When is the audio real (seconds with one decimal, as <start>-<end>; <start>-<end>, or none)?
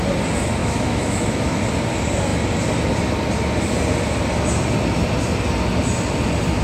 0.0-0.6; 1.6-6.6